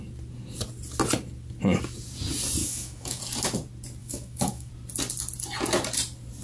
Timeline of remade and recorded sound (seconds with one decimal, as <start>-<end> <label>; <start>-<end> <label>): 0.0-2.6 recorded; 2.6-3.2 remade; 3.2-4.0 recorded; 4.0-4.7 remade; 4.7-6.4 recorded